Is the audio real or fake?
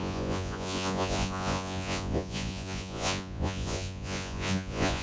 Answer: fake